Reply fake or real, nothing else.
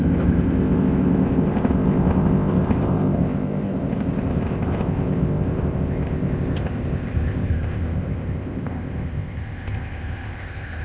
fake